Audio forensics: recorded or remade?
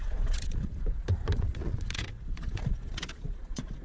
remade